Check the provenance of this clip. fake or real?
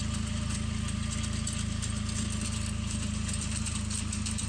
real